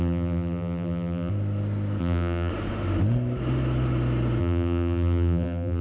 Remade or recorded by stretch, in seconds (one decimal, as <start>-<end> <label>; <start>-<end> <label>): 0.0-1.3 remade; 1.3-2.0 recorded; 2.0-2.5 remade; 2.5-4.4 recorded; 4.4-5.8 remade